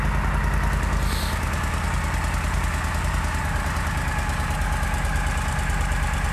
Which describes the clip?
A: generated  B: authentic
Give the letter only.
B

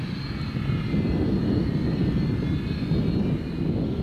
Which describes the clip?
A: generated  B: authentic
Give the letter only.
B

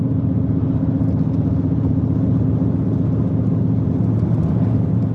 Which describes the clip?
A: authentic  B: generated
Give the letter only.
A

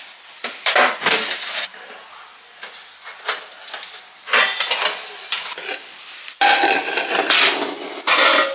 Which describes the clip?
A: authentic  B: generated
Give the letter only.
A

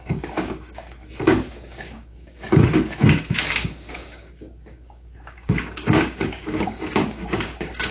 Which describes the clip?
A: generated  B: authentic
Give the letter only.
A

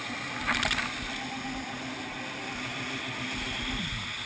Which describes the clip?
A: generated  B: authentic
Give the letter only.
B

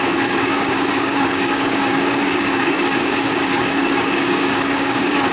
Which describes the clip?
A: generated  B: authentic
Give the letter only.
A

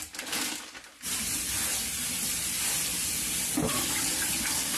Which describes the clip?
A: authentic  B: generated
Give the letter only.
A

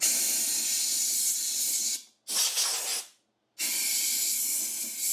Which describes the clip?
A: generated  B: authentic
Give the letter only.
B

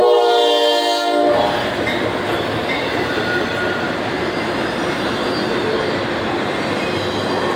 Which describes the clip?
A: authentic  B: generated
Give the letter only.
A